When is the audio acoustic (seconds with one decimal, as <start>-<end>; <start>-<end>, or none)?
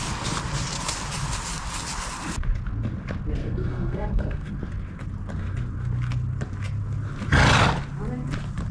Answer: 0.0-3.4; 4.5-8.7